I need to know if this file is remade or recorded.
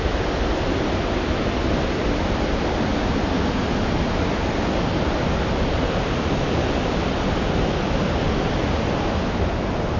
recorded